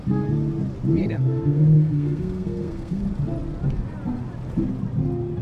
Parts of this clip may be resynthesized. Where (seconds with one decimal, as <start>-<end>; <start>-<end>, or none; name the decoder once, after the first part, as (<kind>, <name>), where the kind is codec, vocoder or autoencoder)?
1.0-3.0 (codec, SNAC)